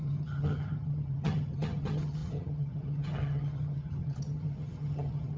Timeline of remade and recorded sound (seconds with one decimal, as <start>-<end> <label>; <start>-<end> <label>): 0.0-5.4 remade